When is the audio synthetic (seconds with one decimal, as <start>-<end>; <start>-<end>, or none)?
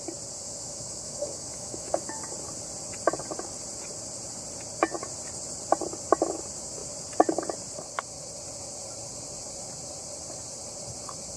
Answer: 0.4-2.2